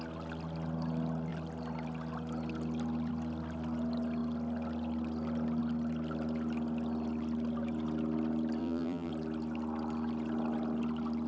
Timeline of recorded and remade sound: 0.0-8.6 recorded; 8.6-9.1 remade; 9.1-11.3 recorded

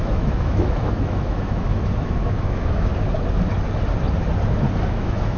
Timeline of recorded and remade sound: 0.0-2.9 remade; 2.9-4.9 recorded; 4.9-5.4 remade